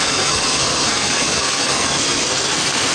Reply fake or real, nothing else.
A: fake